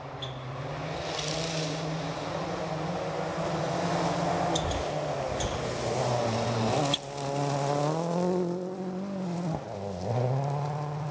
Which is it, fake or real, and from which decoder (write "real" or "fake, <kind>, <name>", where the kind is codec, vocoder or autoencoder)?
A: real